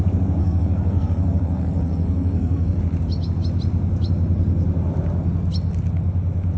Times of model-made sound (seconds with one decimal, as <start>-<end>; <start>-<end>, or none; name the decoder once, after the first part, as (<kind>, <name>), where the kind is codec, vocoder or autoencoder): 0.4-2.8 (codec, SNAC)

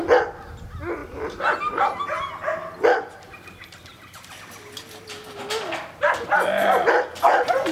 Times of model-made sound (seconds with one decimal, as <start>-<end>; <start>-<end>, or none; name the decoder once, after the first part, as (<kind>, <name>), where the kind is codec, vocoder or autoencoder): none

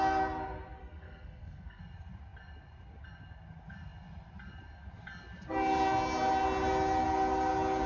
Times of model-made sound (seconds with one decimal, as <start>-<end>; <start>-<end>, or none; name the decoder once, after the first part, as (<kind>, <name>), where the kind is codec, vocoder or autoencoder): 0.8-1.8 (codec, SNAC)

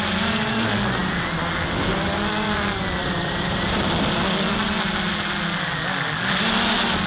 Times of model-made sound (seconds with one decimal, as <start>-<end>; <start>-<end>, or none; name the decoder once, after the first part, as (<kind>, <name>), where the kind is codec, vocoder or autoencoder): 3.0-3.9 (vocoder, BigVGAN v2)